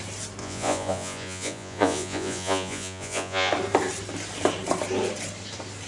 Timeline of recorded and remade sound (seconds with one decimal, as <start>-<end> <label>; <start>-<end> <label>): 0.0-0.4 recorded; 0.4-3.5 remade; 3.5-5.9 recorded